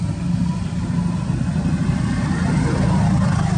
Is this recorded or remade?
recorded